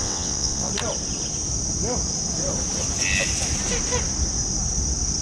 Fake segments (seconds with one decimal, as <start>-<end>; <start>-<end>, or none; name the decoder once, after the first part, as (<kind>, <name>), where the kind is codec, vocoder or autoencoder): 0.0-0.7 (vocoder, WaveNeXt)